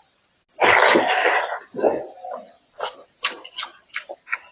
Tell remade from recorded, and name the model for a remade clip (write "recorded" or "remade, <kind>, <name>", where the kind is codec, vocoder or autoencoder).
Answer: recorded